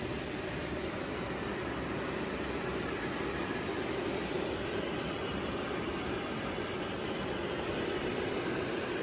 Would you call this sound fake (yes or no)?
yes